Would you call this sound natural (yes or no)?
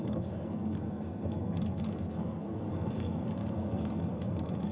no